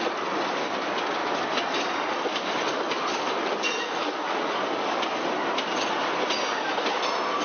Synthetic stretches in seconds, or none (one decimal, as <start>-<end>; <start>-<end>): 1.2-4.4